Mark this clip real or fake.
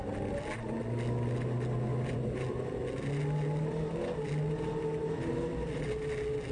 real